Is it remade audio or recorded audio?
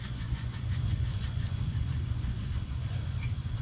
remade